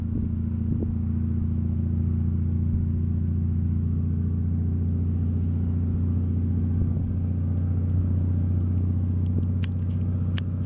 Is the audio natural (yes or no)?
yes